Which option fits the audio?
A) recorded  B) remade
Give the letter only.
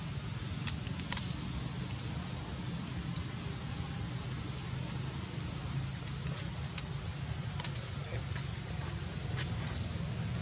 A